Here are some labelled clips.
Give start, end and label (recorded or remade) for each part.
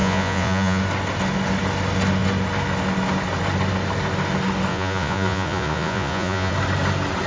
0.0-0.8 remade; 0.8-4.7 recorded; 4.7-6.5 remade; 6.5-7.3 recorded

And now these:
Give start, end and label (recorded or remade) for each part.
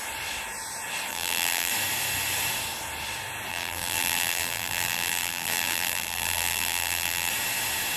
0.0-1.1 recorded; 1.1-1.7 remade; 1.7-3.5 recorded; 3.5-7.3 remade; 7.3-8.0 recorded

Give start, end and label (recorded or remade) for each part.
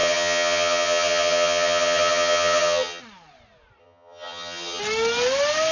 0.0-3.0 remade; 3.0-3.8 recorded; 3.8-4.8 remade; 4.8-5.7 recorded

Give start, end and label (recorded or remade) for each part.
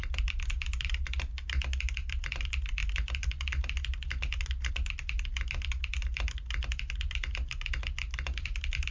0.0-8.9 recorded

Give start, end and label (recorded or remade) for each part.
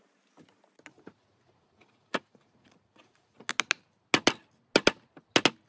0.0-0.9 recorded; 0.9-3.5 remade; 3.5-5.7 recorded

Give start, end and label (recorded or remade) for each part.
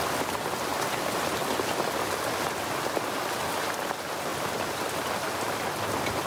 0.0-6.3 recorded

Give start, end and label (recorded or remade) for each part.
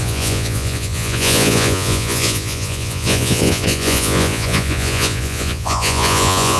0.0-6.6 remade